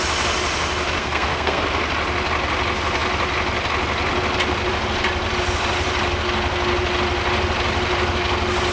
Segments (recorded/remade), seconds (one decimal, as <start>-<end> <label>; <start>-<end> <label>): 0.0-1.0 recorded; 1.0-1.6 remade; 1.6-8.7 recorded